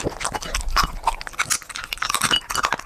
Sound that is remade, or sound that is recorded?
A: recorded